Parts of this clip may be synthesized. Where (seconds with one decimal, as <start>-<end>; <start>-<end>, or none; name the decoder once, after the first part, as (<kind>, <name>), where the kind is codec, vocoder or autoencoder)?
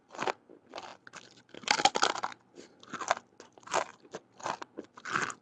none